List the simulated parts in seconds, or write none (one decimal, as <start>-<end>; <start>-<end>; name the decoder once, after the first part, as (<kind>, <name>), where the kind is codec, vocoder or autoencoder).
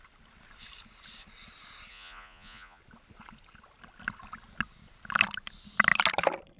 1.9-2.8 (vocoder, Vocos)